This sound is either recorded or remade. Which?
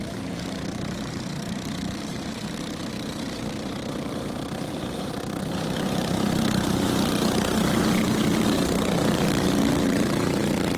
remade